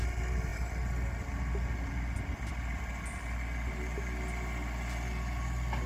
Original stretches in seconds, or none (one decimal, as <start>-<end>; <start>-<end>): 0.0-5.9